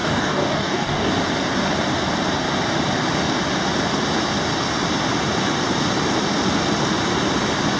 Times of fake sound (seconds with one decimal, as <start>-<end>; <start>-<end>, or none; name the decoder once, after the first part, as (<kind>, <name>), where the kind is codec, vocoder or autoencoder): 0.0-1.1 (codec, DAC)